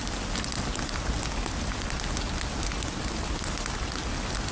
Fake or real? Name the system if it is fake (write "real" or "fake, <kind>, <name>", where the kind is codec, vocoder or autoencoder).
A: real